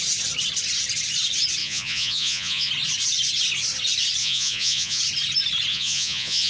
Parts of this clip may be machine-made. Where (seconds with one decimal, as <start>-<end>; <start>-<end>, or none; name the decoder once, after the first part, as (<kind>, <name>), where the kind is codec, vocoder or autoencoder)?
1.6-2.7 (vocoder, Vocos); 4.2-5.0; 5.7-6.5